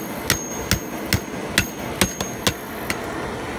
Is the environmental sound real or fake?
real